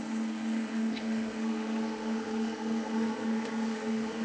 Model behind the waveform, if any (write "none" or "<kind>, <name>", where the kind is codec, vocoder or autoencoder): codec, SNAC